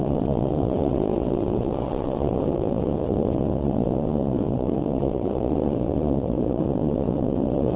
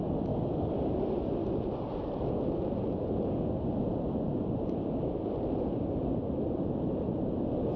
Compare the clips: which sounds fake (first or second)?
first